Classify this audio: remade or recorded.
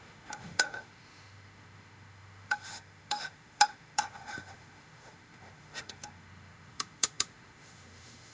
remade